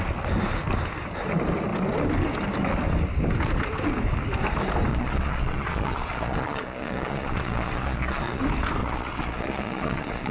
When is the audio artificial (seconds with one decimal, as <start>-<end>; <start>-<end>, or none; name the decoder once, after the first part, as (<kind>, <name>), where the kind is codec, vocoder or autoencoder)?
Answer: 4.9-8.4 (vocoder, Vocos); 8.8-10.3